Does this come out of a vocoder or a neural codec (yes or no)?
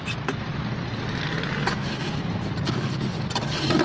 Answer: yes